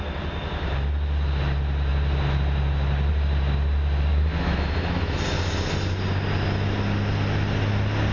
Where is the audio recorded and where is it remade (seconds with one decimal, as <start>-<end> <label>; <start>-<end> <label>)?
0.0-4.1 recorded; 4.1-5.2 remade; 5.2-8.1 recorded